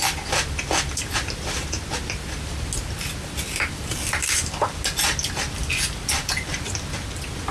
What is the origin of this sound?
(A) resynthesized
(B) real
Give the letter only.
B